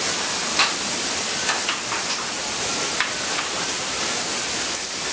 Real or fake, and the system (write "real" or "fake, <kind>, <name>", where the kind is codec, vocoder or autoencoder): real